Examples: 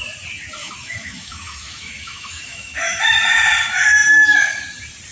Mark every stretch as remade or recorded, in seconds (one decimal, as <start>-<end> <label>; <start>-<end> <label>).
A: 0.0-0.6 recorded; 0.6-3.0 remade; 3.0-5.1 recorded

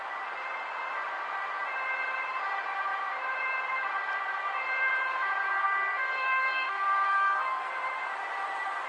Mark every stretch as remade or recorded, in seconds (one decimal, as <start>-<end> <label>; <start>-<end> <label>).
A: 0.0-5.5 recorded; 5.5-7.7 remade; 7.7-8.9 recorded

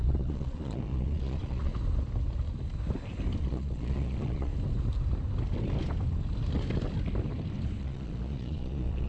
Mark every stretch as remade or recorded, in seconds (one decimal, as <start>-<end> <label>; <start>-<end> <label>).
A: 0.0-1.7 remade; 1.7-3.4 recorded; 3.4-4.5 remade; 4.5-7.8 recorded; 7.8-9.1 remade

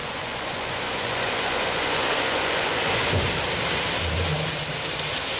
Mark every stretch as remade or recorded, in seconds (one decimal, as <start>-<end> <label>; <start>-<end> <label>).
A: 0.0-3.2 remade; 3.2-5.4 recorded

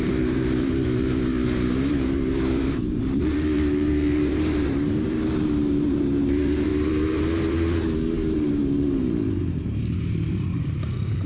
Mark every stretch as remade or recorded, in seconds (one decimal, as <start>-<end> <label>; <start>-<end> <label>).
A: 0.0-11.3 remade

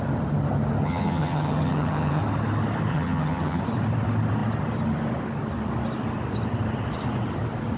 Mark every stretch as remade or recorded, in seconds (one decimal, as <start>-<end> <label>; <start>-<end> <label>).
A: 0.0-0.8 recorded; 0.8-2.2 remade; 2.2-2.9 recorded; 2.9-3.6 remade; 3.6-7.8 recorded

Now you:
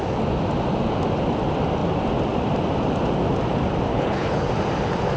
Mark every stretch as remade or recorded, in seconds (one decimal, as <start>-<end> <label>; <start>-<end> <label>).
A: 0.0-3.9 recorded; 3.9-4.5 remade; 4.5-5.2 recorded

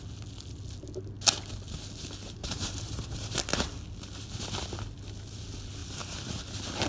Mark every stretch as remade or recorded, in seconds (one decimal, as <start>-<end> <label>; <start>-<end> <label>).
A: 0.0-2.4 recorded; 2.4-3.4 remade; 3.4-5.8 recorded; 5.8-6.5 remade; 6.5-6.9 recorded